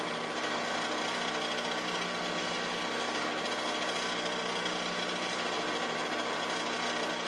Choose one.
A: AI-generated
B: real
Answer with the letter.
B